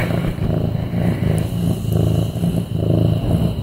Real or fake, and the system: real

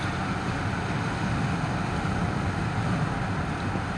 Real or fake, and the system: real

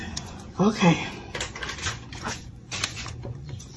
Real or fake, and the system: fake, vocoder, Vocos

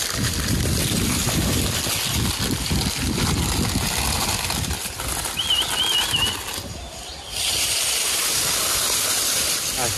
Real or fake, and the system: real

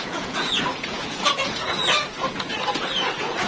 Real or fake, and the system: fake, vocoder, Vocos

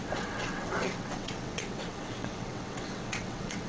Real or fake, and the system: fake, vocoder, WaveNeXt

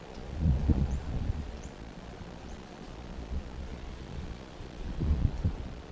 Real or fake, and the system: fake, vocoder, Vocos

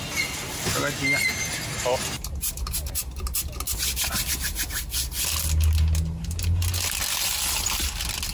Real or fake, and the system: real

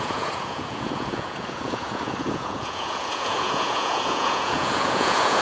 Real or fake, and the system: fake, vocoder, Vocos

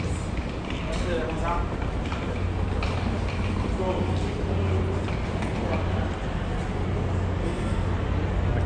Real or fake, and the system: real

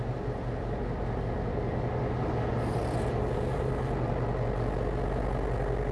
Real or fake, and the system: real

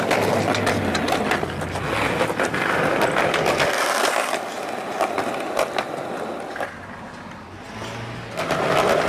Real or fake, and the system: real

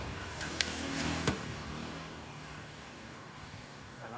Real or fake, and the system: fake, codec, DAC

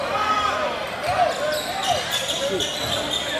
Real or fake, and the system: real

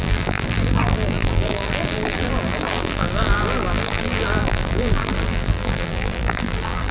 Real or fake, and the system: fake, vocoder, BigVGAN v2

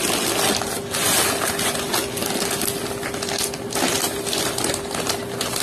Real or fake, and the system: real